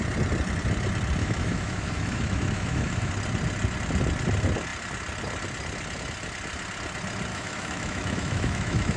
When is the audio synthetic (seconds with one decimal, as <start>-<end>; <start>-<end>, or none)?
1.2-3.1; 7.3-9.0